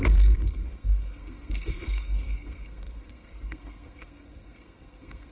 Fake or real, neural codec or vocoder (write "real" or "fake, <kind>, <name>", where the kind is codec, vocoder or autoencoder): fake, codec, SNAC